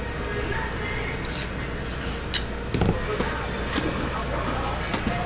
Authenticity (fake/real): real